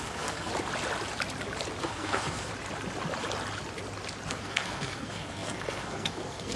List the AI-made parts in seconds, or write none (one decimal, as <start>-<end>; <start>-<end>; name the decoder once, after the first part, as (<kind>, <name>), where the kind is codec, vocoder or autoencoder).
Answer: 0.0-0.5 (codec, SNAC); 1.8-2.5; 4.3-6.6